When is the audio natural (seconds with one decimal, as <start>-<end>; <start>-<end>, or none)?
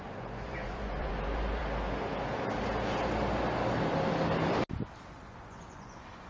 1.6-5.1